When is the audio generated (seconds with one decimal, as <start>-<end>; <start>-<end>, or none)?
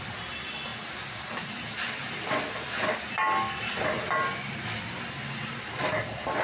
none